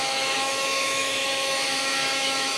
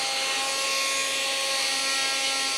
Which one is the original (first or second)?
second